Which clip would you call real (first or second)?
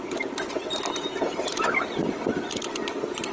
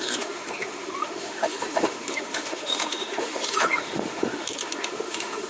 first